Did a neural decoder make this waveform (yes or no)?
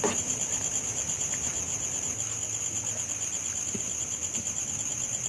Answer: no